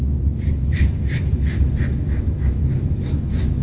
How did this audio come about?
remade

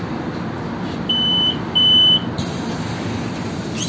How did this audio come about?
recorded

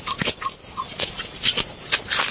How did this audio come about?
recorded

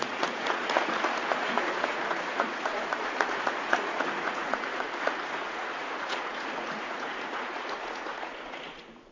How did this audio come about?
remade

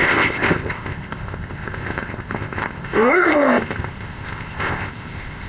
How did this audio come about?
remade